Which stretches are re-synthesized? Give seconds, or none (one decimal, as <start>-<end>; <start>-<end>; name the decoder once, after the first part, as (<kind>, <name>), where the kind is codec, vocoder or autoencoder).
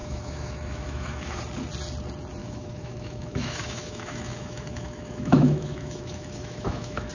0.0-1.4 (autoencoder, DAC-VAE); 2.4-7.1